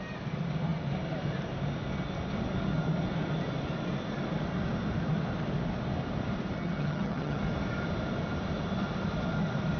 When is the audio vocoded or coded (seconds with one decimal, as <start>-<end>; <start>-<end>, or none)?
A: 6.6-7.4